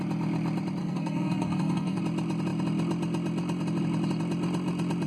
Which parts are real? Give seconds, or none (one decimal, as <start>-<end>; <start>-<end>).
0.0-0.8; 2.0-5.1